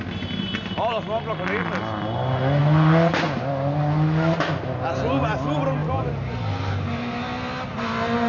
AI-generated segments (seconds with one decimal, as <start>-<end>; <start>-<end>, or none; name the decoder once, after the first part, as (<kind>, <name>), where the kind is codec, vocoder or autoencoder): none